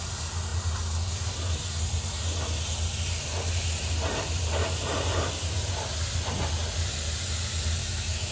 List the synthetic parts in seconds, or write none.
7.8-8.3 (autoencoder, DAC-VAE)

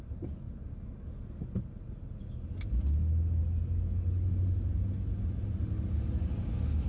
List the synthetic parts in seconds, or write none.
none

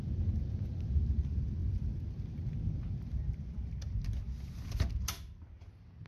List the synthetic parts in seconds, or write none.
none

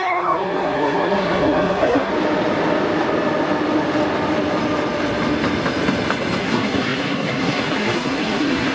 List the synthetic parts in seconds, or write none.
0.0-2.1 (codec, SNAC); 6.4-8.7

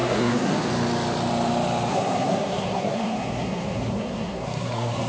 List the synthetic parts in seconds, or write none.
0.0-0.7 (codec, SNAC); 1.9-5.1